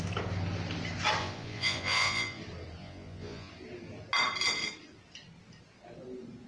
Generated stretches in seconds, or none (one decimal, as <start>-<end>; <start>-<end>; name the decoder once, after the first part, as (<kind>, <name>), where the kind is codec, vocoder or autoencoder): 1.2-2.4 (vocoder, Vocos); 2.8-3.5